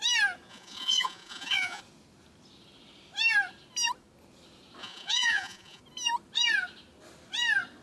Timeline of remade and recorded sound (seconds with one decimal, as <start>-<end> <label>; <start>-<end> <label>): 0.0-0.5 recorded; 0.5-1.8 remade; 1.8-4.8 recorded; 4.8-5.8 remade; 5.8-7.8 recorded